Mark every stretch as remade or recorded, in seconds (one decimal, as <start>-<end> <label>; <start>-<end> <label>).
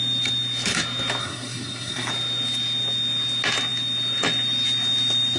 0.0-1.2 recorded; 1.2-2.1 remade; 2.1-5.4 recorded